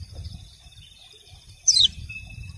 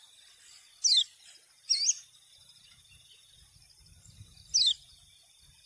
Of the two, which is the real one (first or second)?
second